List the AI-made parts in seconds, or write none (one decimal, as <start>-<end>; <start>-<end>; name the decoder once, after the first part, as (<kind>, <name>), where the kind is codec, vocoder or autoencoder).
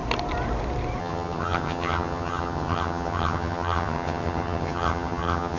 1.0-5.6 (vocoder, HiFi-GAN)